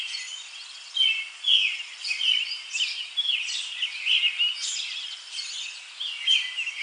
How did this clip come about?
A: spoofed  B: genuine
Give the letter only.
B